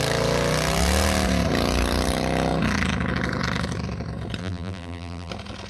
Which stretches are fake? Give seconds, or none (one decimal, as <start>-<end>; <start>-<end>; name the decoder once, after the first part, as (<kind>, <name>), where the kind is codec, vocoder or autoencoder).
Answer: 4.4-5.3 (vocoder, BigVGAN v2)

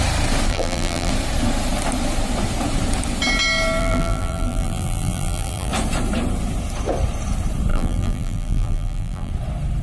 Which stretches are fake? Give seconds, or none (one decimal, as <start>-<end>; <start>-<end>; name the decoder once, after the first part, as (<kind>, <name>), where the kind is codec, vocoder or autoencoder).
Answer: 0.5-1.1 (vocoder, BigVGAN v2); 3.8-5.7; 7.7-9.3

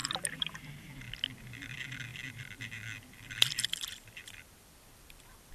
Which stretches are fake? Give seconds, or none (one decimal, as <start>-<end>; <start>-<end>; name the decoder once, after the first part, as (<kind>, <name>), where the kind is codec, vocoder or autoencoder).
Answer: 0.0-0.6 (vocoder, BigVGAN v2); 2.1-5.5

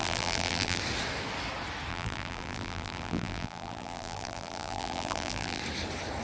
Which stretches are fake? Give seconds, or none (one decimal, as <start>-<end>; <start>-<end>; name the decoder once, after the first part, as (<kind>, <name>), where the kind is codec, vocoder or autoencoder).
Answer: 0.0-0.8 (vocoder, BigVGAN v2); 1.9-5.6

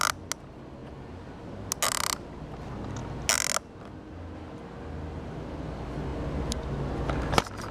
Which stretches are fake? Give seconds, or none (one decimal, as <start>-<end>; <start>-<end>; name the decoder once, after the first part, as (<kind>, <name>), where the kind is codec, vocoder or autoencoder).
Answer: none

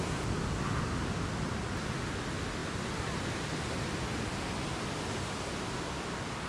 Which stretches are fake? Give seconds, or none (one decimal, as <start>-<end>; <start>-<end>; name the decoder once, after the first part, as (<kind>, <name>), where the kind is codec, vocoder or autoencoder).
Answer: none

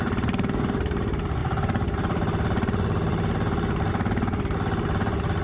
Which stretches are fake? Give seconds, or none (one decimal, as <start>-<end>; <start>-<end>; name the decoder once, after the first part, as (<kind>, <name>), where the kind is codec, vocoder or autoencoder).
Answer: 0.0-5.4 (vocoder, BigVGAN v2)

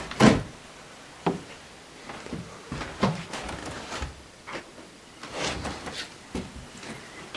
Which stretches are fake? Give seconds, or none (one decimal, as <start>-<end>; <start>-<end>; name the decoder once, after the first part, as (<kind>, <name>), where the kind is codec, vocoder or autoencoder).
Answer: 3.6-4.6 (vocoder, BigVGAN v2)